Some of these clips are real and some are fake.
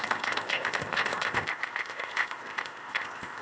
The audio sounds fake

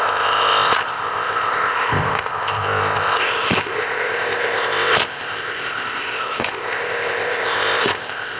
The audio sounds fake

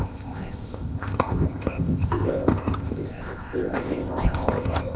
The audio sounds fake